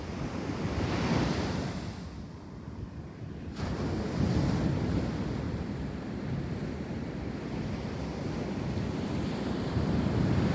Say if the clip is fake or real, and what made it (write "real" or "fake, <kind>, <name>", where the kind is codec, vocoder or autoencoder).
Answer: real